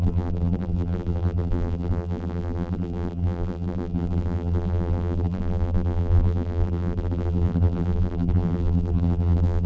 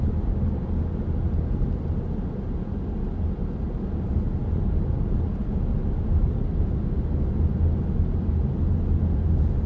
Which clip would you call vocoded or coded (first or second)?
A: first